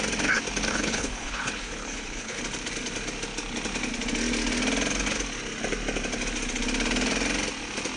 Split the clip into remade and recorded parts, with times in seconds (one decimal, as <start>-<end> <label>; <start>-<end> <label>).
0.0-0.7 recorded; 0.7-2.4 remade; 2.4-8.0 recorded